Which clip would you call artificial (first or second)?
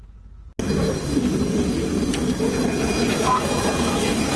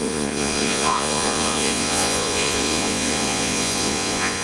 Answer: second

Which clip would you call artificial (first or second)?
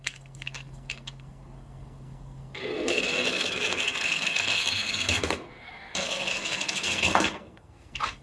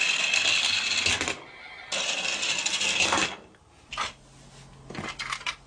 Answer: first